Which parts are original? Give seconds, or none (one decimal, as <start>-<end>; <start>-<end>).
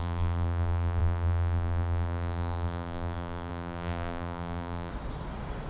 4.9-5.7